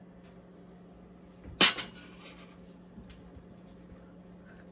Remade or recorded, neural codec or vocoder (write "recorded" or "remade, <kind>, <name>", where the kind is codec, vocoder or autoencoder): recorded